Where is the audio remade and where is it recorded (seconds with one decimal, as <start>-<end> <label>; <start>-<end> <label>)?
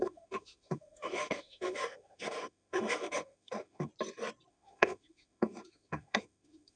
0.0-3.9 remade; 3.9-4.5 recorded; 4.5-6.8 remade